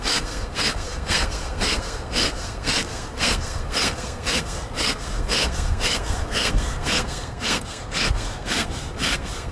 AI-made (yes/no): yes